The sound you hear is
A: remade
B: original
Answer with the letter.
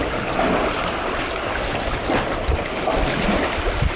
B